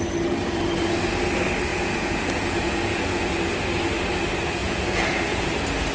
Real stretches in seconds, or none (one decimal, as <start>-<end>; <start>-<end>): 0.0-1.7; 3.3-4.6; 5.5-5.9